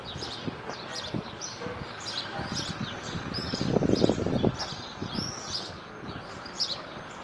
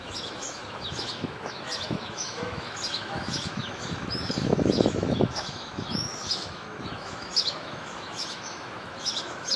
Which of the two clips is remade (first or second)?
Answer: second